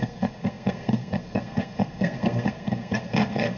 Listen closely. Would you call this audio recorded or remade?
remade